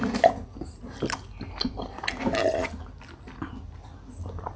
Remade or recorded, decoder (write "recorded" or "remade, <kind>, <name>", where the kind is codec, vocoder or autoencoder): recorded